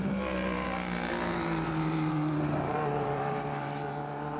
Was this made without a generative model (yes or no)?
no